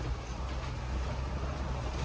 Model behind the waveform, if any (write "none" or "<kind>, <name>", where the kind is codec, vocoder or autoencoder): none